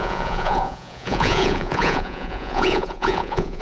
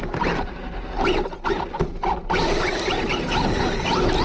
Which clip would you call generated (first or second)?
first